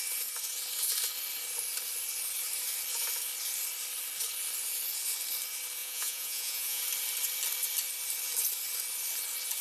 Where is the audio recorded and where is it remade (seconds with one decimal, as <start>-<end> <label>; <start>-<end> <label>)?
0.0-5.8 recorded; 5.8-6.8 remade; 6.8-9.6 recorded